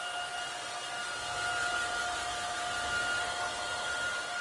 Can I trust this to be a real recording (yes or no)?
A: yes